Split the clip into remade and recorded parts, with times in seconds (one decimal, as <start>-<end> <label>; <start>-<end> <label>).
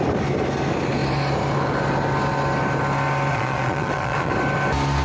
0.0-3.3 recorded; 3.3-4.3 remade; 4.3-5.0 recorded